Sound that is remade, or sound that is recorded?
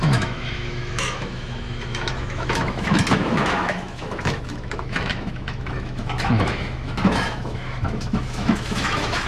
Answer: remade